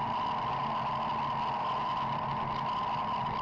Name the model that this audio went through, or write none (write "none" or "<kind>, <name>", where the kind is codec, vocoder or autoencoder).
none